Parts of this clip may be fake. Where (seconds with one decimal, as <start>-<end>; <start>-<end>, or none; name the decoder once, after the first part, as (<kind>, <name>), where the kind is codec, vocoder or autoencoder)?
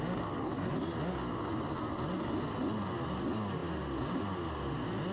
none